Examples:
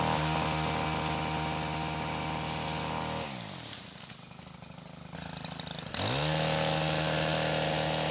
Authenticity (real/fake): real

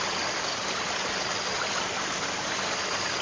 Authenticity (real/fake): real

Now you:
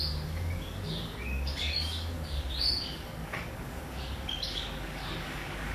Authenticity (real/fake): fake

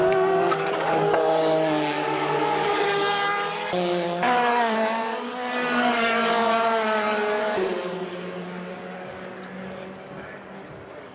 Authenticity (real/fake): fake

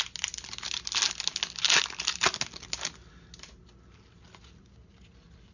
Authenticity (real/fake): real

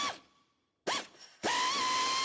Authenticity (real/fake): real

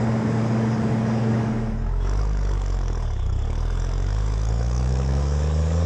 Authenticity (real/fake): fake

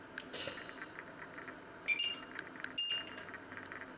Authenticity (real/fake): real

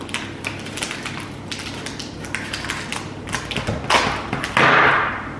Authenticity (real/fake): real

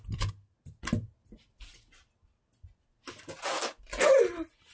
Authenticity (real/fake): real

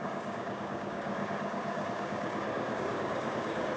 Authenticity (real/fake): fake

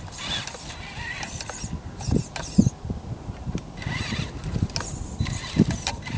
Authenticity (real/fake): real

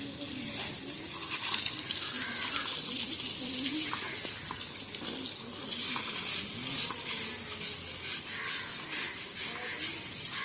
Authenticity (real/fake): real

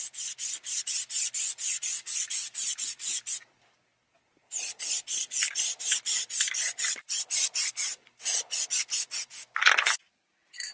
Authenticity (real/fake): real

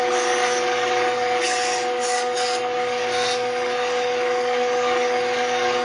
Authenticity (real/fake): fake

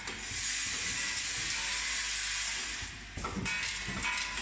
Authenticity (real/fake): real